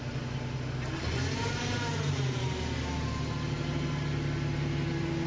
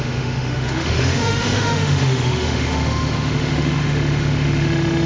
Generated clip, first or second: second